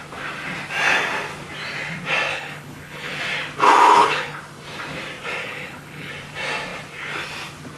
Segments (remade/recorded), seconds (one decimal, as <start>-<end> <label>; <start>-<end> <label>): 0.0-2.3 recorded; 2.3-3.2 remade; 3.2-3.9 recorded; 3.9-4.4 remade; 4.4-5.4 recorded; 5.4-6.1 remade; 6.1-7.8 recorded